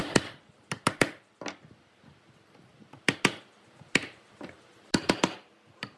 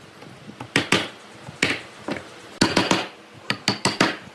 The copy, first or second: first